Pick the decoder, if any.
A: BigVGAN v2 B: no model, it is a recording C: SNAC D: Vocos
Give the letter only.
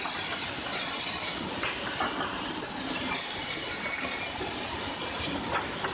B